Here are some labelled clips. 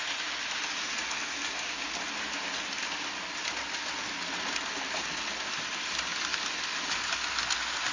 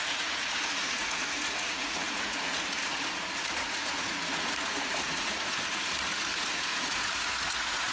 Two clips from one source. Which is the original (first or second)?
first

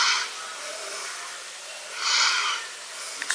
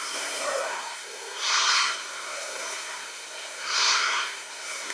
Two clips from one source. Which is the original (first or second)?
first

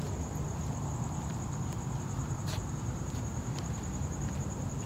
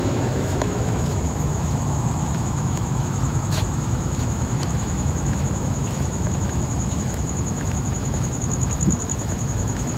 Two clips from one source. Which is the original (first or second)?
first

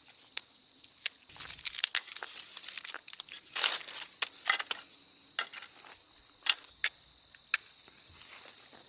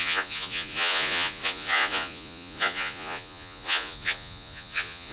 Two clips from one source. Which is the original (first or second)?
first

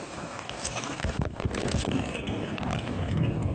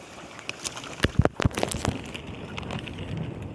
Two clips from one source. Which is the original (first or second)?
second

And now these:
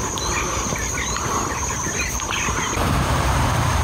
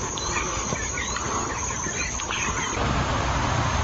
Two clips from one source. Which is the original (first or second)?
second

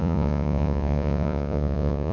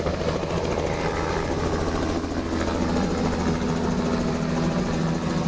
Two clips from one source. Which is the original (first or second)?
second